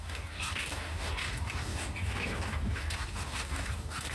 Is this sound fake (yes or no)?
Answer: yes